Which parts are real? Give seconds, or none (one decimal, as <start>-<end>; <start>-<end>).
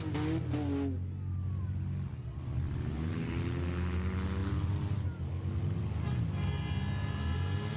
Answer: 0.0-7.8